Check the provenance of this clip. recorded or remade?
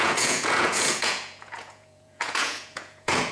remade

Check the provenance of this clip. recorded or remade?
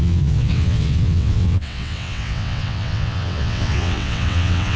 remade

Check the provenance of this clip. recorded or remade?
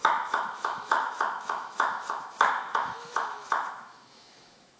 remade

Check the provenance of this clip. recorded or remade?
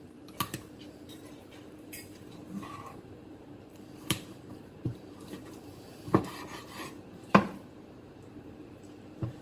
remade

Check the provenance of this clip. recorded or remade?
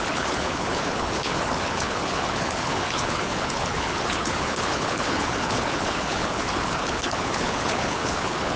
remade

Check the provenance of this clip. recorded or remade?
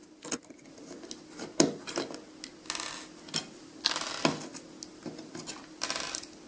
recorded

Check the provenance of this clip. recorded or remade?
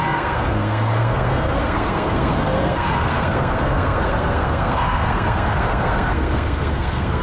remade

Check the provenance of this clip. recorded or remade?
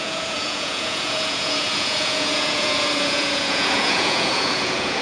remade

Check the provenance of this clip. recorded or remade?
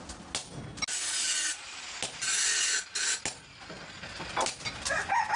recorded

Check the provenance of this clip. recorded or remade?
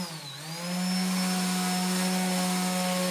recorded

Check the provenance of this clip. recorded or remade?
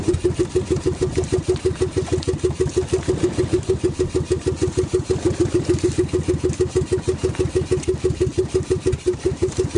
remade